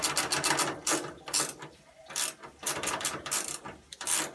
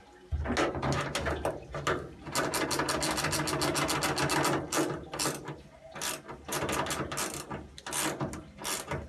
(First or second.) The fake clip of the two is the first